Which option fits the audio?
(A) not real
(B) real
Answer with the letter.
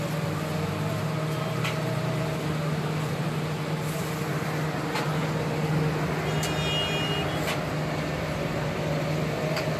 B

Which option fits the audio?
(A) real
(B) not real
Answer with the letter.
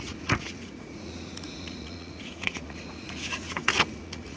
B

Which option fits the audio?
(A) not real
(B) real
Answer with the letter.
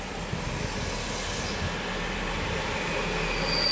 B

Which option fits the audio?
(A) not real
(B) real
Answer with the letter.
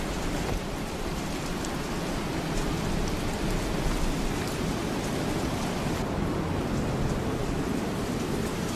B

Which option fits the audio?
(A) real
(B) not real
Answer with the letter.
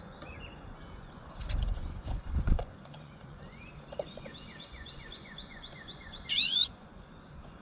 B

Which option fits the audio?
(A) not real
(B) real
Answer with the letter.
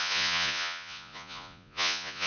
A